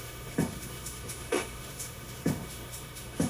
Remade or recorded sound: remade